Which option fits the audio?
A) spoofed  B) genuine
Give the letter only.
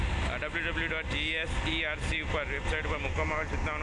B